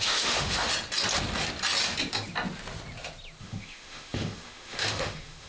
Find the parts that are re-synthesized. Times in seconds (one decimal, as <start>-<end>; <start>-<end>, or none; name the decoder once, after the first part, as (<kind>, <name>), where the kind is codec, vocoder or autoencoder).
0.0-0.7 (autoencoder, DAC-VAE); 3.4-5.5